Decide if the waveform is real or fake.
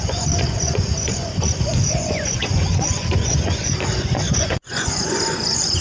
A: fake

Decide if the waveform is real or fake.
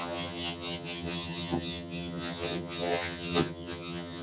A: fake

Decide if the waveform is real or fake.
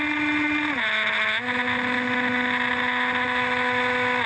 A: real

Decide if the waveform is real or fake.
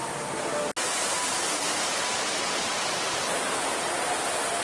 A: real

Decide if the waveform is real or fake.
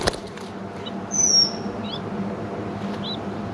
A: real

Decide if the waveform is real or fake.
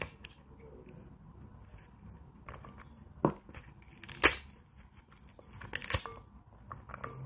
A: real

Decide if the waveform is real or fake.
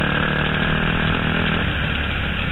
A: real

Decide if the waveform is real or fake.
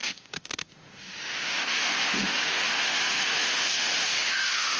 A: fake